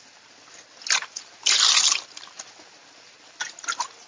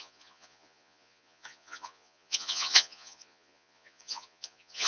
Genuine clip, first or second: first